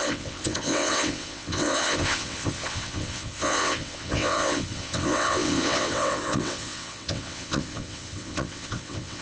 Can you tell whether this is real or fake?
fake